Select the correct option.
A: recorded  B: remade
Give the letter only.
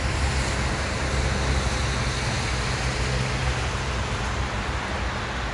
A